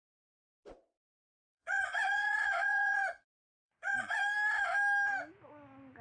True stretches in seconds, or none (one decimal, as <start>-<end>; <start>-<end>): 0.0-1.2; 4.2-6.0